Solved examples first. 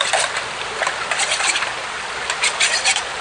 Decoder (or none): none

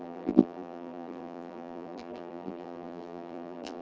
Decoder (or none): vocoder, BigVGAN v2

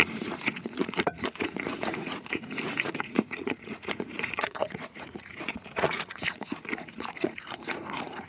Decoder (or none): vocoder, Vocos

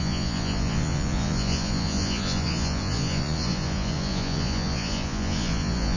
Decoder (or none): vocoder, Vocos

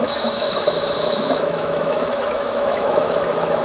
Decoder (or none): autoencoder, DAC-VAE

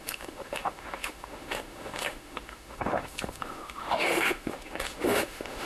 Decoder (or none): autoencoder, DAC-VAE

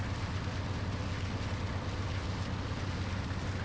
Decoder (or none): none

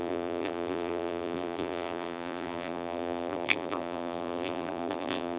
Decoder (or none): vocoder, BigVGAN v2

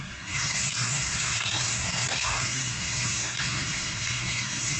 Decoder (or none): codec, SNAC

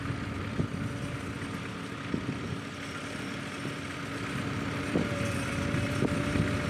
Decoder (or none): none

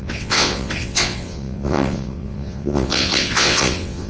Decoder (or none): vocoder, WaveNeXt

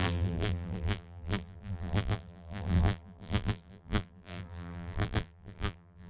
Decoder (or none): vocoder, BigVGAN v2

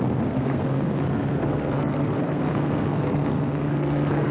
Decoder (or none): codec, SNAC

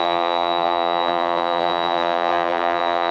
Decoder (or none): vocoder, BigVGAN v2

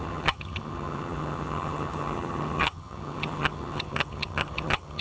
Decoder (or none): vocoder, HiFi-GAN